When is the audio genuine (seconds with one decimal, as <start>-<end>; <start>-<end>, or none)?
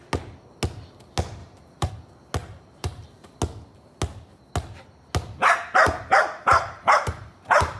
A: 0.0-1.4; 1.9-2.4; 3.0-5.8